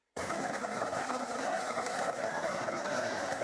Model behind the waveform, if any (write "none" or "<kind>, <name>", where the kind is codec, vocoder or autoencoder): codec, SNAC